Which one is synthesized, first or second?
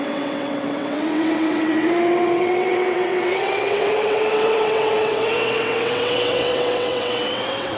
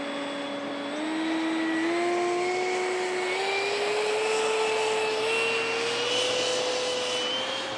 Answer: first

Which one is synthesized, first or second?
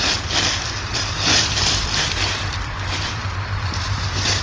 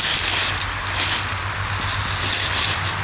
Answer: first